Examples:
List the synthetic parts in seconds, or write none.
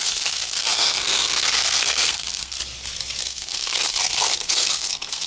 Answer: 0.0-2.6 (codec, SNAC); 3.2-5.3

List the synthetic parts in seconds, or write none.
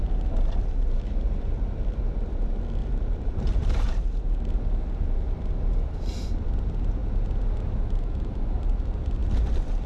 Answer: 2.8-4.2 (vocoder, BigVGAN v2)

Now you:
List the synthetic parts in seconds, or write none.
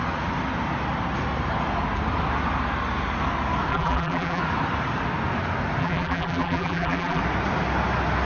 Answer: 3.7-4.4 (vocoder, BigVGAN v2); 5.8-7.2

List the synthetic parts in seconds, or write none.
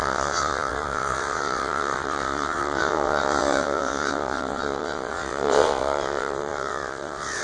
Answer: 0.0-7.4 (vocoder, WaveNeXt)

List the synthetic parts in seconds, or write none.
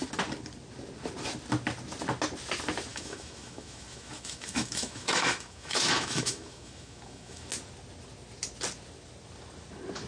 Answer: 2.9-7.5 (autoencoder, DAC-VAE)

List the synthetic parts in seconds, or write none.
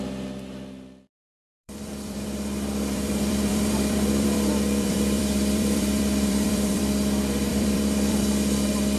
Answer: 1.6-6.8 (vocoder, BigVGAN v2); 7.5-8.2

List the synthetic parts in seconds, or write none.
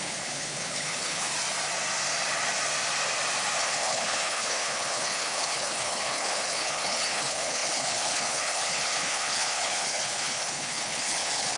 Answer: 0.0-1.3 (codec, HILCodec); 3.6-11.6